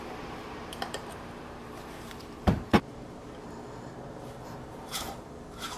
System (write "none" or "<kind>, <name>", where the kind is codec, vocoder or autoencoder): vocoder, BigVGAN v2